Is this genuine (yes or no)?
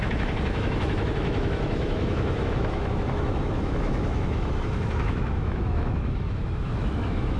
no